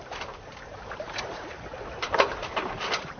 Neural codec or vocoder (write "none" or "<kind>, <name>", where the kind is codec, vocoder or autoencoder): vocoder, BigVGAN v2